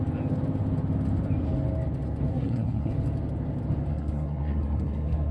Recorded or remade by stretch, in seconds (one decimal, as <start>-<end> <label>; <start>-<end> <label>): 0.0-2.3 recorded; 2.3-2.9 remade; 2.9-3.9 recorded; 3.9-5.3 remade